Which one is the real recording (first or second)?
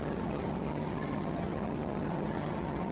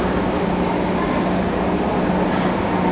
second